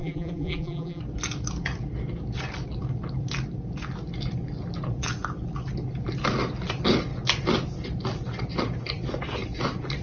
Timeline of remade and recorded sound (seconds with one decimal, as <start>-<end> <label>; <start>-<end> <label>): 0.0-1.0 remade; 1.0-10.0 recorded